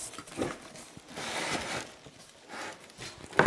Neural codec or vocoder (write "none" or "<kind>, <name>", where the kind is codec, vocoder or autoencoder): none